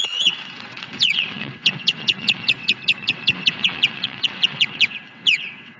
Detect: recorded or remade remade